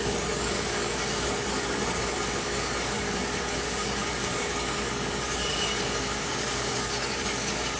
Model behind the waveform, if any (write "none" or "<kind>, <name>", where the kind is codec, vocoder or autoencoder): codec, DAC